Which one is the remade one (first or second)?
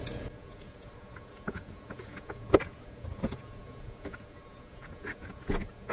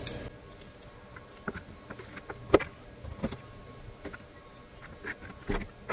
first